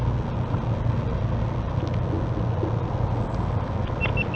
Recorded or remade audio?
recorded